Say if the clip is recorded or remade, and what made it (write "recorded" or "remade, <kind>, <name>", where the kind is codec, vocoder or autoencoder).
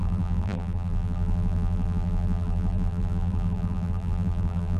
remade, vocoder, BigVGAN v2